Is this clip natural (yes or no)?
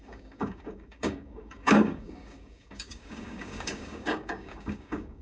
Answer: no